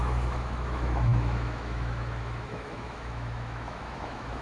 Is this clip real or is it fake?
fake